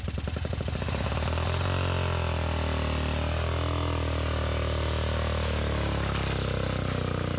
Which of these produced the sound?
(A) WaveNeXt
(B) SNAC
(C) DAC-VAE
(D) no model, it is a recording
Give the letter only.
D